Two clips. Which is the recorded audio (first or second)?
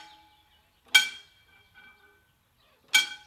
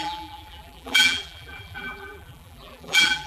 first